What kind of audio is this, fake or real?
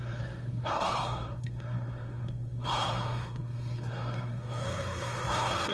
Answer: fake